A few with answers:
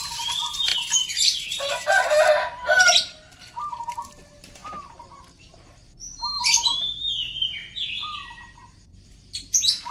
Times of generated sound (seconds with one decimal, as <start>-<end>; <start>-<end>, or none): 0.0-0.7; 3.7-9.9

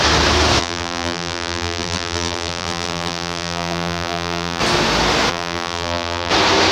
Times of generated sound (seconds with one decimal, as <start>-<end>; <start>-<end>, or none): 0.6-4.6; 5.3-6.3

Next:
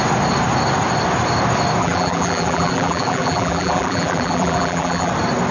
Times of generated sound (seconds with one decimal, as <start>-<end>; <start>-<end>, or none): 1.8-5.1

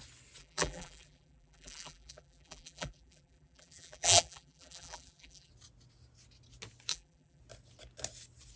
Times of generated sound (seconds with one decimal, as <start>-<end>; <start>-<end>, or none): 0.4-5.5; 6.9-7.4

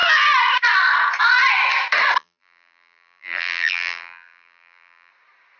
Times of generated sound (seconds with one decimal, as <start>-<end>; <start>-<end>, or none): 2.2-5.1